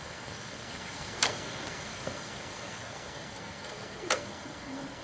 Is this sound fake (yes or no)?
yes